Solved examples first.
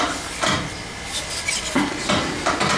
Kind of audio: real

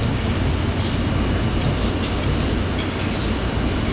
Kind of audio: real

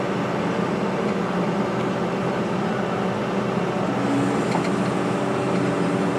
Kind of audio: real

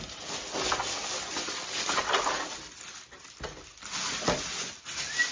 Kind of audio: real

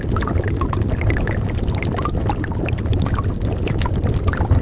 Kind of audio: real